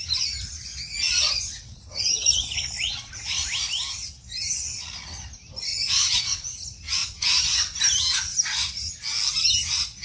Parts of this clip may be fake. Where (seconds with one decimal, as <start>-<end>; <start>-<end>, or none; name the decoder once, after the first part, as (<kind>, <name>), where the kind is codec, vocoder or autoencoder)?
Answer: 0.7-3.1 (vocoder, Vocos); 5.7-6.3